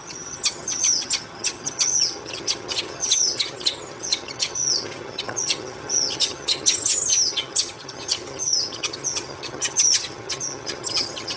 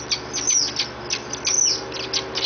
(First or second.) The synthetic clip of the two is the first